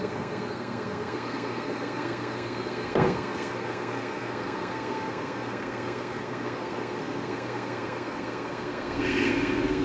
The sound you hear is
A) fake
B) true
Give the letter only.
A